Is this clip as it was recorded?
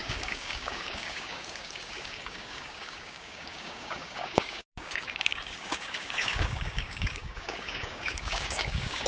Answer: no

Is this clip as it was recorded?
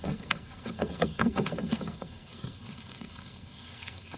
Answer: no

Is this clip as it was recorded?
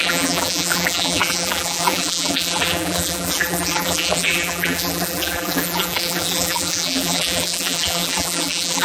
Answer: no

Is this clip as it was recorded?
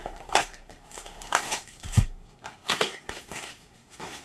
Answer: no